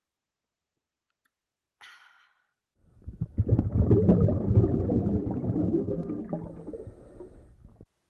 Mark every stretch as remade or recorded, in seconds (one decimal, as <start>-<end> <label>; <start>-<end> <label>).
0.0-5.6 recorded; 5.6-6.2 remade; 6.2-8.1 recorded